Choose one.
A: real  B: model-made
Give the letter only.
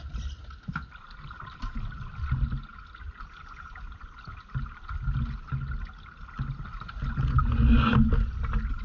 A